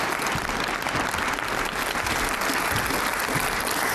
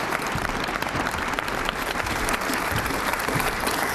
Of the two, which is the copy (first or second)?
second